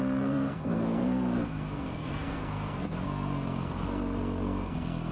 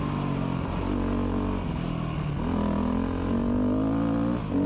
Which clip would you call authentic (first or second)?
second